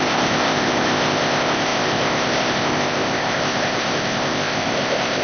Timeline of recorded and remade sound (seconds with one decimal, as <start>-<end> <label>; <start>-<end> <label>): 0.0-5.2 remade